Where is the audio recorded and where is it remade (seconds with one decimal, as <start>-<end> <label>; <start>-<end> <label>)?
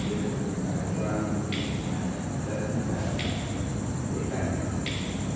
0.0-5.4 recorded